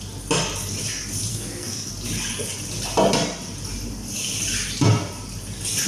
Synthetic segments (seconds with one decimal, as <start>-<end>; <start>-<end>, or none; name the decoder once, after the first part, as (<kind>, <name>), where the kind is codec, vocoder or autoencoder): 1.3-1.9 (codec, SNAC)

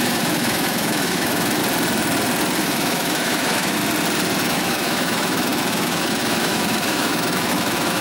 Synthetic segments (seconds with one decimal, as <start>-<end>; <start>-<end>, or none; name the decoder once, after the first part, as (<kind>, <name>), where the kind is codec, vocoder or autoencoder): 0.0-1.6 (autoencoder, DAC-VAE); 2.6-3.8; 4.4-8.0

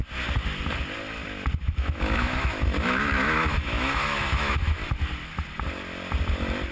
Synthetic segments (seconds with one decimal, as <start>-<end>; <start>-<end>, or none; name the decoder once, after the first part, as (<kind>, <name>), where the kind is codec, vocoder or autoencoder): 1.6-4.8 (autoencoder, DAC-VAE)

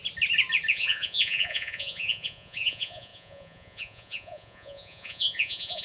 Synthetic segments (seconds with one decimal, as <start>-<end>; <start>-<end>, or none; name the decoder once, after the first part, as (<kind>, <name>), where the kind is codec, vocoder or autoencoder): 0.7-5.8 (vocoder, Vocos)

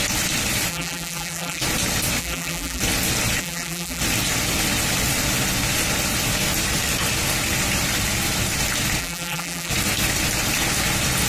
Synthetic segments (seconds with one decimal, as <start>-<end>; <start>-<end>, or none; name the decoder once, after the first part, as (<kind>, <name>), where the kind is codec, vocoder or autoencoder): 0.7-1.6 (vocoder, BigVGAN v2); 2.2-2.8; 3.4-4.0; 9.0-9.7

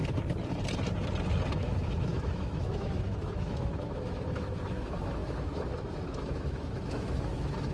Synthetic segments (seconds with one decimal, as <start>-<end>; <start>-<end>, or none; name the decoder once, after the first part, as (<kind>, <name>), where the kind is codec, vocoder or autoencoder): 1.5-7.7 (autoencoder, DAC-VAE)